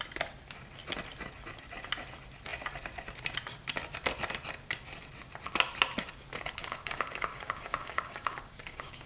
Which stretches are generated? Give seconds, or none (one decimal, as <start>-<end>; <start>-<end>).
6.6-9.1